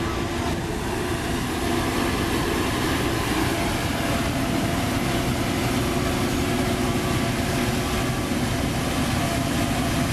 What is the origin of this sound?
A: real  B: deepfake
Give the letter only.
A